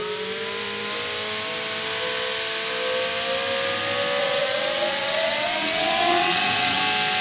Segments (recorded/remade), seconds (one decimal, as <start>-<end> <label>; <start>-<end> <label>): 0.0-4.2 recorded; 4.2-6.8 remade; 6.8-7.2 recorded